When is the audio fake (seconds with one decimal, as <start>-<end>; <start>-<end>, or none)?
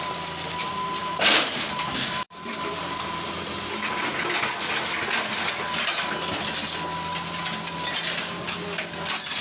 1.0-3.3